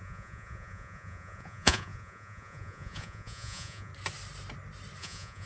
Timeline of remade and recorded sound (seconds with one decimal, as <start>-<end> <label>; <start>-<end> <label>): 0.0-3.9 remade; 3.9-5.0 recorded; 5.0-5.5 remade